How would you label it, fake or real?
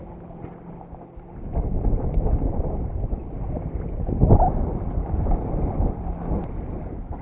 real